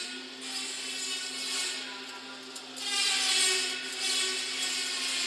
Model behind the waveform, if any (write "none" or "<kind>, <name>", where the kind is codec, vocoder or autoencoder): none